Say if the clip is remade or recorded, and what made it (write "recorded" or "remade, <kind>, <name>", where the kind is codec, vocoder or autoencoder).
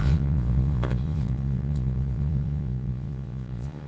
remade, vocoder, Vocos